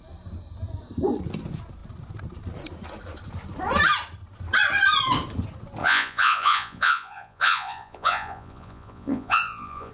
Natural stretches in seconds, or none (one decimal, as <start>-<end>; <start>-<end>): 0.0-5.8